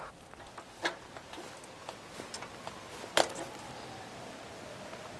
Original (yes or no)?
yes